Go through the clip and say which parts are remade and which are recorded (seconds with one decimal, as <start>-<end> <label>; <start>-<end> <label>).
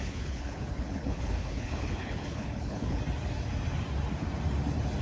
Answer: 0.0-3.0 remade; 3.0-5.0 recorded